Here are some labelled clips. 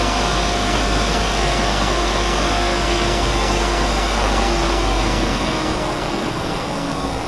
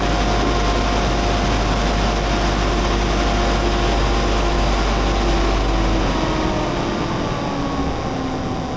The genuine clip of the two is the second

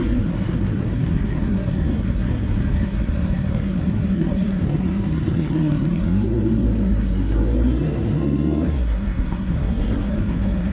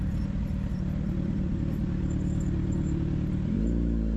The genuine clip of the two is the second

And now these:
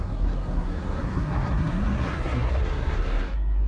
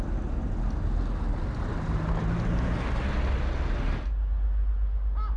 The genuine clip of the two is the second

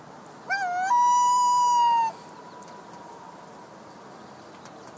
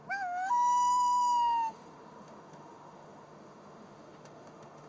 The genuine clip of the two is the first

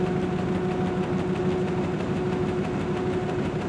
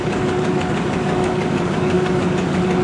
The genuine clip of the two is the first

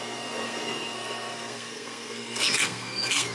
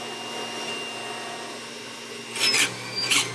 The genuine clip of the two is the second